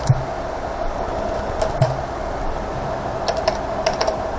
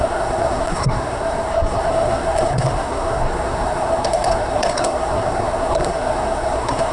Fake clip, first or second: second